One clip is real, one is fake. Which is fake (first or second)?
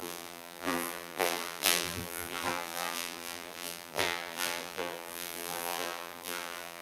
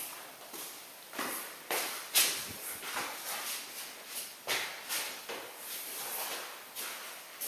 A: first